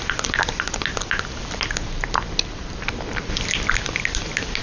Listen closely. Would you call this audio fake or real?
fake